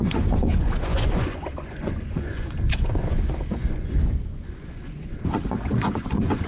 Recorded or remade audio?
remade